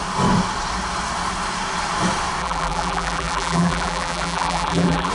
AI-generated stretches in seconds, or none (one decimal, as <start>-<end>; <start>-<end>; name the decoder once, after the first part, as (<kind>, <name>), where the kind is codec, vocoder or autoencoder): 2.4-5.1 (vocoder, BigVGAN v2)